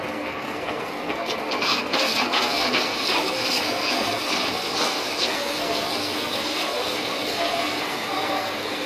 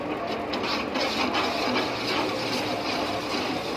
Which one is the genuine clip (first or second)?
second